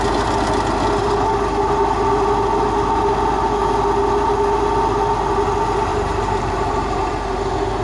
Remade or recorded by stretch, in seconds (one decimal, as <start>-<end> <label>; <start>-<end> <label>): 0.0-5.9 recorded; 5.9-7.1 remade; 7.1-7.8 recorded